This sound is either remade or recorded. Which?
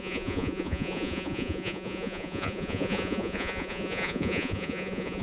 remade